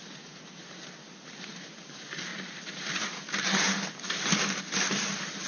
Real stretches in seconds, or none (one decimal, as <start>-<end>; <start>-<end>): 0.0-5.5